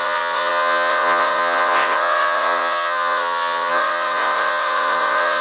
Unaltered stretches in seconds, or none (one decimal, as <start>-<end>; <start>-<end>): none